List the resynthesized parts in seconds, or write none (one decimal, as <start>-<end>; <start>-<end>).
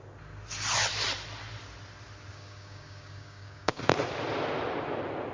2.3-3.8